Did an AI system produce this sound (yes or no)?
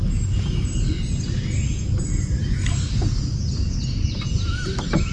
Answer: no